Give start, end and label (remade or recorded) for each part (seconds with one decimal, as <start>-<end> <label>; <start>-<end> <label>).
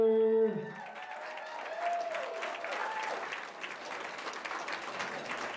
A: 0.0-2.8 recorded; 2.8-4.2 remade; 4.2-5.6 recorded